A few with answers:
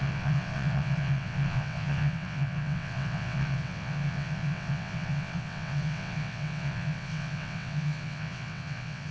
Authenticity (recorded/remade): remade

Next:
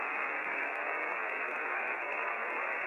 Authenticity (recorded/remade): remade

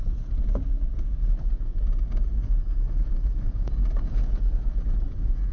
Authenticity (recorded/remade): remade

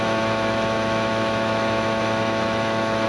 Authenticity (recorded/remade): remade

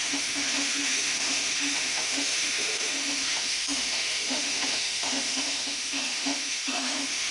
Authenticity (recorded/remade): remade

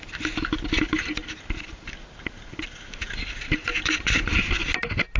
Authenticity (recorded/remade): recorded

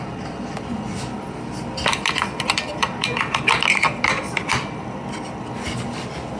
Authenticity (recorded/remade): recorded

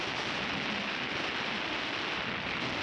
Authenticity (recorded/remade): recorded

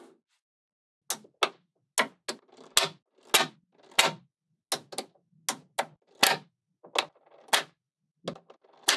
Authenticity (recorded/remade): recorded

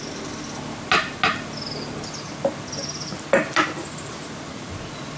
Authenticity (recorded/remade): recorded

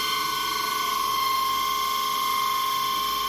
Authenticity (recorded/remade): recorded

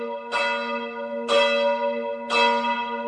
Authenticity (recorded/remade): recorded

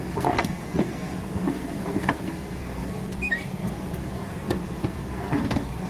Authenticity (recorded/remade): remade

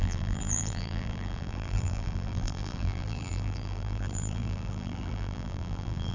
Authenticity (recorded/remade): remade